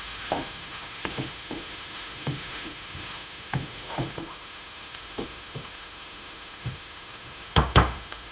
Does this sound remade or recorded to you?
remade